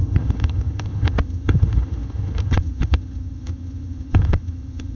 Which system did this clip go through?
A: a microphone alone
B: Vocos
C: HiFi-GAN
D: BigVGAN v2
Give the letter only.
C